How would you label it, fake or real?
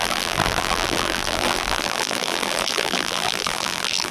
fake